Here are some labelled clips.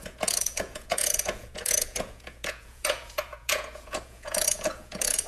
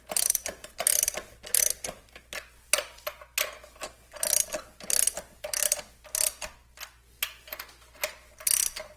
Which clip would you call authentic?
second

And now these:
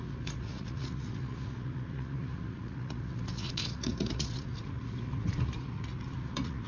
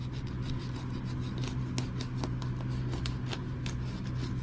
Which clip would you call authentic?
second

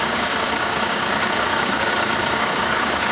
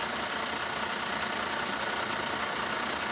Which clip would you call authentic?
second